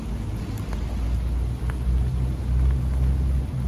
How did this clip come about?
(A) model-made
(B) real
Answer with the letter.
B